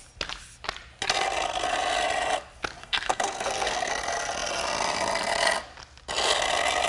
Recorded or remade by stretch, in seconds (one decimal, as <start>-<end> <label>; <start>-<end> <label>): 0.0-2.8 recorded; 2.8-3.9 remade; 3.9-6.9 recorded